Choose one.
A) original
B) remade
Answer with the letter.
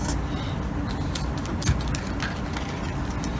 A